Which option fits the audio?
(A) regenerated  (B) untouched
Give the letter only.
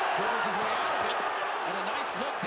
B